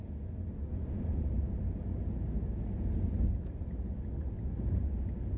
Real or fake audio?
real